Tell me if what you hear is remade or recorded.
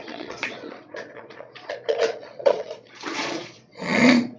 remade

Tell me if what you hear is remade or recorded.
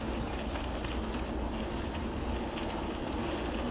recorded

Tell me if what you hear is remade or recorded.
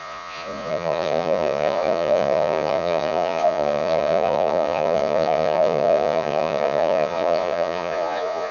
remade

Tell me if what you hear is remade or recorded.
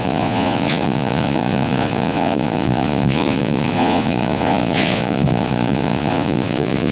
remade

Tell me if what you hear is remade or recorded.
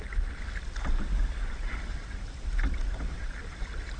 recorded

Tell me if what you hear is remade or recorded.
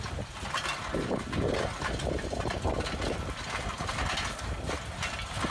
recorded